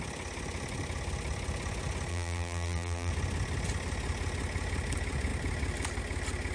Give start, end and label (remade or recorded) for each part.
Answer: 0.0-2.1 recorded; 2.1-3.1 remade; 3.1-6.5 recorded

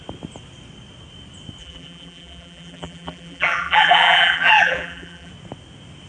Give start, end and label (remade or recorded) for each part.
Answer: 0.0-1.6 recorded; 1.6-5.3 remade; 5.3-6.1 recorded

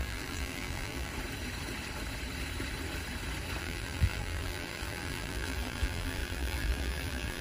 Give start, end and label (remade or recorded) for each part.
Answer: 0.0-1.1 remade; 1.1-3.6 recorded; 3.6-7.4 remade

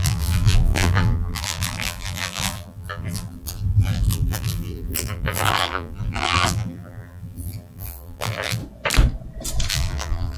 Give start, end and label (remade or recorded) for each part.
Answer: 0.0-8.6 remade; 8.6-9.7 recorded; 9.7-10.4 remade

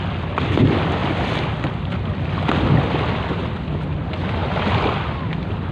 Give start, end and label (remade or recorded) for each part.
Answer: 0.0-5.7 recorded

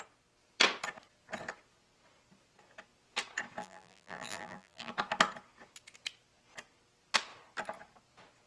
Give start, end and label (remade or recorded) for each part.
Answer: 0.0-3.6 recorded; 3.6-4.9 remade; 4.9-8.5 recorded

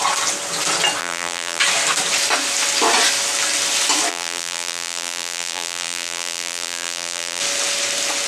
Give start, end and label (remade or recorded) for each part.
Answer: 0.0-1.0 recorded; 1.0-1.6 remade; 1.6-4.1 recorded; 4.1-7.4 remade; 7.4-8.3 recorded

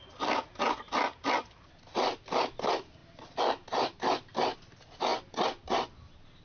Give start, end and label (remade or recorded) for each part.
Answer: 0.0-6.4 recorded